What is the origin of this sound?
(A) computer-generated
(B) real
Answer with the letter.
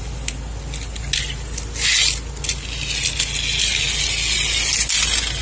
B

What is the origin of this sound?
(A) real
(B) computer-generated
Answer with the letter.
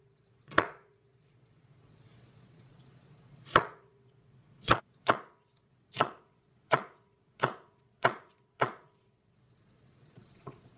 B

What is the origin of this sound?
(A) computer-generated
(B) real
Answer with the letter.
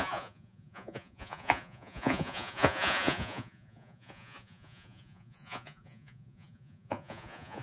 A